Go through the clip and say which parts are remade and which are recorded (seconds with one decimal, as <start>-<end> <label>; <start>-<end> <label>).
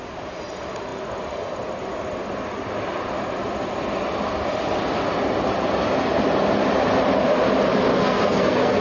0.0-7.9 recorded; 7.9-8.8 remade